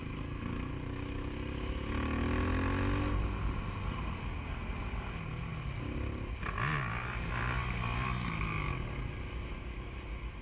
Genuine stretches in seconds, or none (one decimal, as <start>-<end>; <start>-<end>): 0.0-10.4

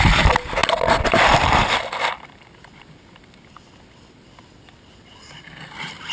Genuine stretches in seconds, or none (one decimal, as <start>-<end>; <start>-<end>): 0.0-6.1

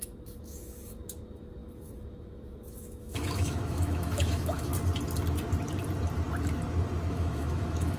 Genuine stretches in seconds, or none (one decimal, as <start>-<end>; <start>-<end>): 4.7-7.1

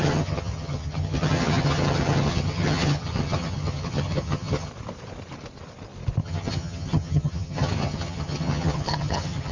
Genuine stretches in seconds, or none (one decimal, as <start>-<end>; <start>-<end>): 4.7-6.2

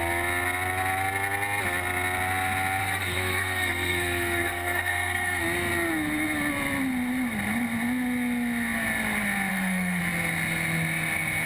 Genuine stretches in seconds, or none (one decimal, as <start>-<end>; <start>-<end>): 0.0-2.8; 5.4-9.5; 10.0-11.5